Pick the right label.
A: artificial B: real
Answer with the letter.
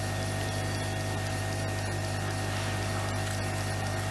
B